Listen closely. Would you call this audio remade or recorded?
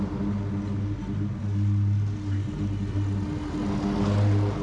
recorded